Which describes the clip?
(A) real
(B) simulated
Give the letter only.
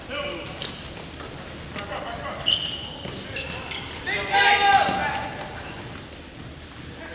A